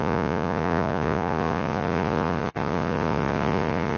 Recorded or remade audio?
remade